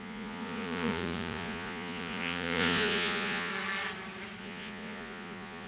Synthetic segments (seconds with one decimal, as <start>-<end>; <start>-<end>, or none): 0.0-3.5; 4.4-5.7